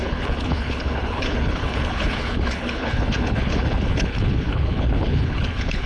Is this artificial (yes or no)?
yes